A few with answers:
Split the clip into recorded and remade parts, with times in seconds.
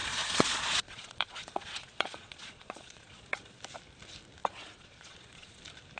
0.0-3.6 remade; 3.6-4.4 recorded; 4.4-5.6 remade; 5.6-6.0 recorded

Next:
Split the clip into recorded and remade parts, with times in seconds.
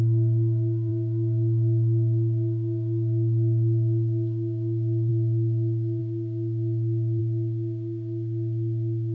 0.0-9.1 recorded